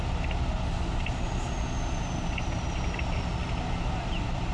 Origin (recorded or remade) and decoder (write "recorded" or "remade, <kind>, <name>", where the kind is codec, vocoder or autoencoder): recorded